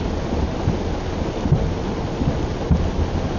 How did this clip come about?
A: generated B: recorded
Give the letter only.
B